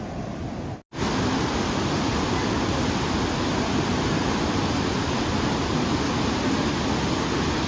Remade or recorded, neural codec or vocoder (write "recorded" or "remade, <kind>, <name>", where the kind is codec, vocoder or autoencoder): recorded